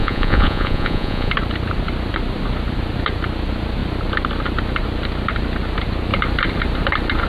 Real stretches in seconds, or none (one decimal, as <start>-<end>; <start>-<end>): 1.3-7.3